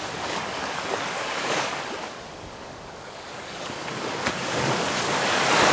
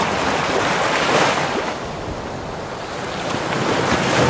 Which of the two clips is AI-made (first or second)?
first